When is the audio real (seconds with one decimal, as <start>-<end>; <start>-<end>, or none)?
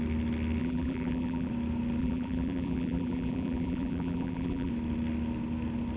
0.0-0.6; 1.5-2.0; 4.7-6.0